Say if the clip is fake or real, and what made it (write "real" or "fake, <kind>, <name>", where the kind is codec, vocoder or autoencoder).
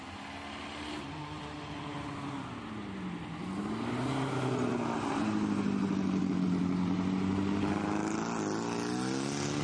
real